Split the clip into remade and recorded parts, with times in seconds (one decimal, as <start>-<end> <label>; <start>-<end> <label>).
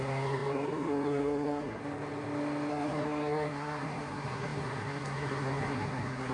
0.0-1.8 remade; 1.8-2.7 recorded; 2.7-6.3 remade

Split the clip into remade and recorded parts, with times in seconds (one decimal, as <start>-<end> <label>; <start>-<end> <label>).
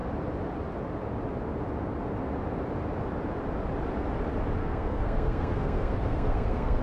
0.0-4.6 recorded; 4.6-6.8 remade